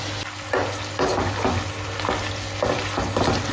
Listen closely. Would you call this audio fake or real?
real